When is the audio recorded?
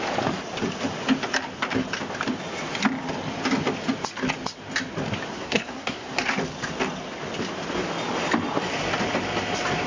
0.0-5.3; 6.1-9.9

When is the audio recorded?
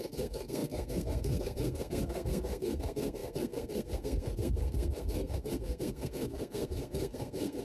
none